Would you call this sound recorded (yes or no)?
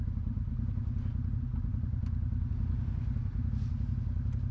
yes